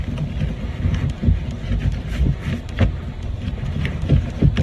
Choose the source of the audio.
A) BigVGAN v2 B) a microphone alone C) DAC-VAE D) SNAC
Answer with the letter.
B